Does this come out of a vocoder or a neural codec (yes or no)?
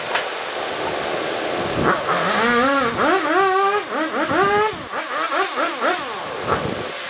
no